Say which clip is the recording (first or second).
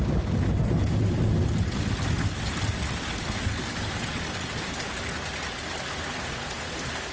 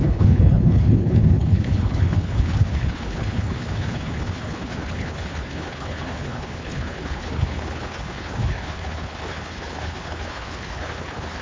first